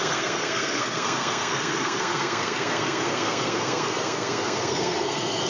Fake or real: fake